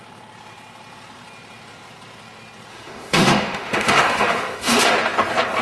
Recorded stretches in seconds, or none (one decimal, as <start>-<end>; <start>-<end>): 0.0-2.7; 4.8-5.6